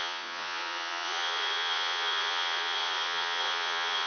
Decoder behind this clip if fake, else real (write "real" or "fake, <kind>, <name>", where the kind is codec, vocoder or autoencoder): fake, vocoder, Vocos